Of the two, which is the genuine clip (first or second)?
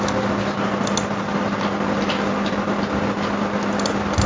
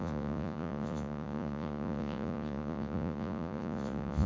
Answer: first